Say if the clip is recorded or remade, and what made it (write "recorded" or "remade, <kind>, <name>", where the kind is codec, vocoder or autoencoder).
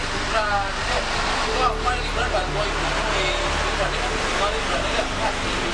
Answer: recorded